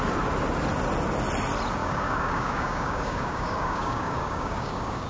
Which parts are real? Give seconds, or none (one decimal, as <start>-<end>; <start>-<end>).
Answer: 0.0-1.8